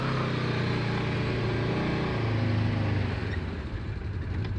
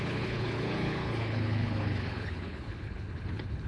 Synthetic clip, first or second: second